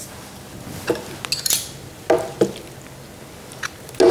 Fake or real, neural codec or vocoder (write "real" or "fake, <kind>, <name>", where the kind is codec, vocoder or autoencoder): real